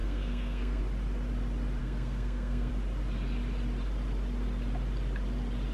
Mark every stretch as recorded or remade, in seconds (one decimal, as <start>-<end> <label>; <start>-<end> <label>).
0.0-0.8 remade; 0.8-1.8 recorded; 1.8-2.7 remade; 2.7-5.7 recorded